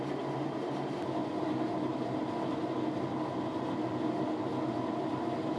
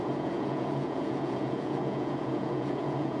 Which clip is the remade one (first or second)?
second